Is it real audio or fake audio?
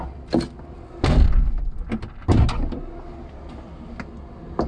real